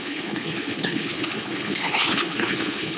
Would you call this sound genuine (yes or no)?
no